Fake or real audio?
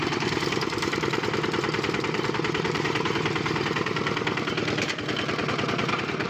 fake